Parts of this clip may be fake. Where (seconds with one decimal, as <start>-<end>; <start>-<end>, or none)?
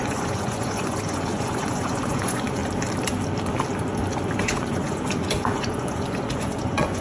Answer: 0.0-2.6; 4.4-7.0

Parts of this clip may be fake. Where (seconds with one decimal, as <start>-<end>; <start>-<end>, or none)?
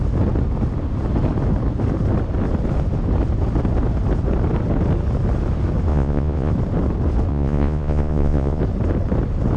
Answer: 5.9-6.5; 7.3-8.6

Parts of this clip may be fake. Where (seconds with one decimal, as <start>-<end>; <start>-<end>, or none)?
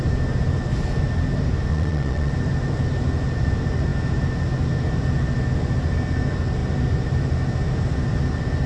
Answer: 1.7-2.3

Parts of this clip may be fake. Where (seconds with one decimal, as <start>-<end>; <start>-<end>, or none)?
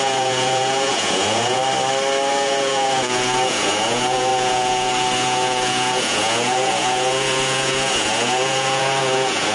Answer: 0.0-1.6; 2.3-9.5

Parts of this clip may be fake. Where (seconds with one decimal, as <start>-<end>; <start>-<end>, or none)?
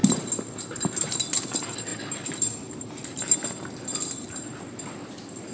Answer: none